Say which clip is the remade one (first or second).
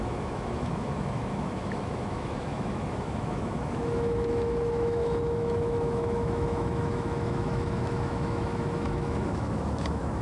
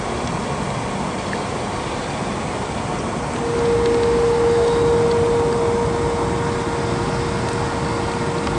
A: first